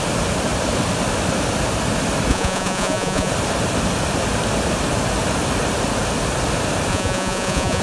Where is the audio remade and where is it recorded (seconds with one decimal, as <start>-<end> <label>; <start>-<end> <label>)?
0.0-2.3 recorded; 2.3-3.3 remade; 3.3-6.9 recorded; 6.9-7.8 remade